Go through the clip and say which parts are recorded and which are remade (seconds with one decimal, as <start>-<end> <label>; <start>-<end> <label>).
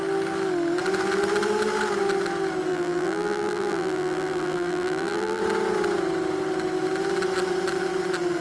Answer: 0.0-2.7 recorded; 2.7-5.4 remade; 5.4-8.4 recorded